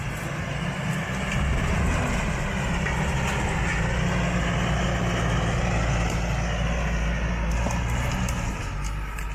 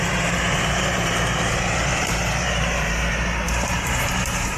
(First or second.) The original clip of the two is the first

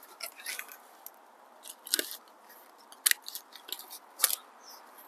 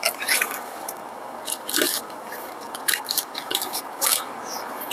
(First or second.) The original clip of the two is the first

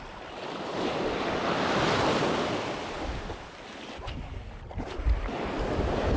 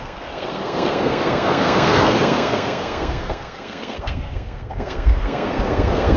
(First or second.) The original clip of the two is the first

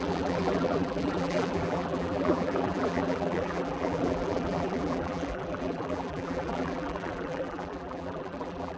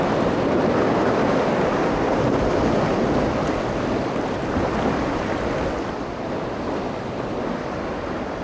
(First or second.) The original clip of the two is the second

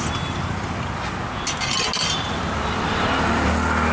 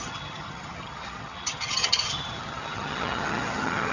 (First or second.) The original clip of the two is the first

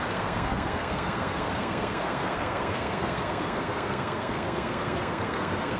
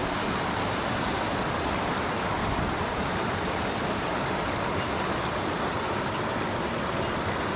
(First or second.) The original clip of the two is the second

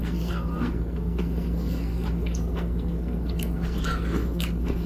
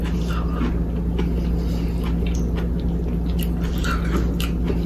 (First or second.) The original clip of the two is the second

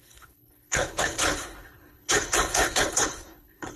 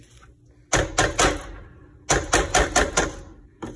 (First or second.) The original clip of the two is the second